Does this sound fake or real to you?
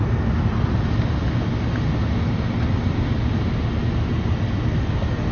real